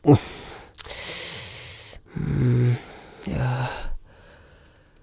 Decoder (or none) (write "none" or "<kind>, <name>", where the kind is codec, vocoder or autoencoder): none